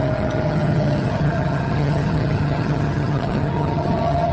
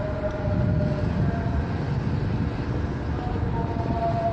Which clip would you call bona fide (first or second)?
second